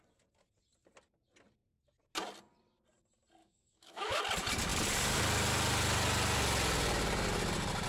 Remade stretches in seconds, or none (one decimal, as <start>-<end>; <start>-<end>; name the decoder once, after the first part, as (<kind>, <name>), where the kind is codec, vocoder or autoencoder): 3.4-4.2 (autoencoder, DAC-VAE)